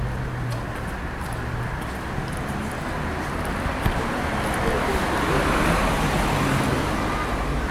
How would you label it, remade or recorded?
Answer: recorded